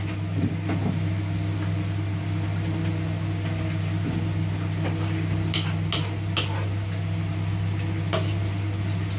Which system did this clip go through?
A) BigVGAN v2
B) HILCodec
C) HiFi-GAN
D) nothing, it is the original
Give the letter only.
D